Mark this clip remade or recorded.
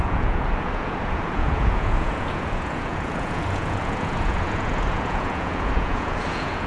remade